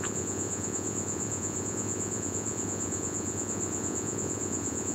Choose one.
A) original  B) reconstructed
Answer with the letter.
B